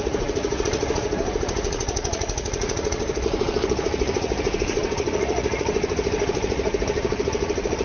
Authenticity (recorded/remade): remade